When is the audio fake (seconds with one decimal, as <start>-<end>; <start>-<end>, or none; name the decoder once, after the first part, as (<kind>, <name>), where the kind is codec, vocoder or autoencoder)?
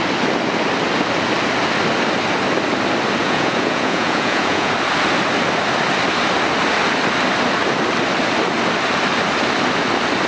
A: 3.2-4.7 (vocoder, Vocos)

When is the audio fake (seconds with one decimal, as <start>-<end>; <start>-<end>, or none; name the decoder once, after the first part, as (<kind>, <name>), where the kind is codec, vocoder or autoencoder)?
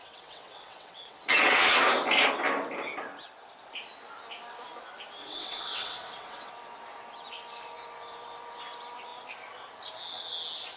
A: 0.0-1.8 (vocoder, WaveNeXt); 5.2-6.5